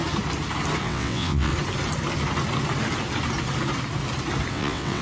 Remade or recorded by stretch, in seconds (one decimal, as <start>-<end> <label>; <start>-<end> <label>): 0.0-0.8 recorded; 0.8-1.5 remade; 1.5-4.5 recorded; 4.5-5.0 remade